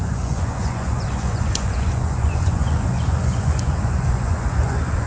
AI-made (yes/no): yes